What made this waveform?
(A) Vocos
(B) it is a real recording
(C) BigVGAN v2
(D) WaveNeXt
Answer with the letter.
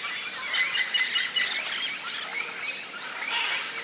B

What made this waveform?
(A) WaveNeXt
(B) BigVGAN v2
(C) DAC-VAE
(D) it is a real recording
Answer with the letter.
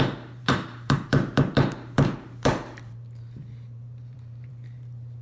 B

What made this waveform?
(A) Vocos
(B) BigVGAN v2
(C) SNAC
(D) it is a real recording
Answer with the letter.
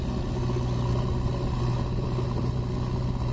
D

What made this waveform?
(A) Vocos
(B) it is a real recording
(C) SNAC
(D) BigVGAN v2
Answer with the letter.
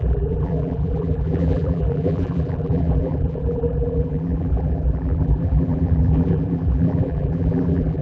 D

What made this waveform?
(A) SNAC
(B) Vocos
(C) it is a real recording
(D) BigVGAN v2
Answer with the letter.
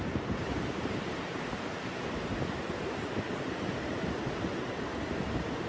D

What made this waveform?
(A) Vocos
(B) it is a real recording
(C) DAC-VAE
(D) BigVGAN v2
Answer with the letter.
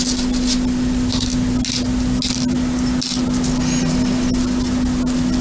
B